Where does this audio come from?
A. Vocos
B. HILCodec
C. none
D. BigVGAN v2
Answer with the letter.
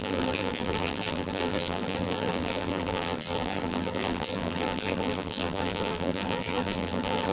D